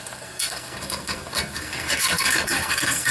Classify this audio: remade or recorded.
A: remade